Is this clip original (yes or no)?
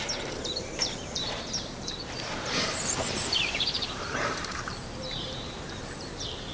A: no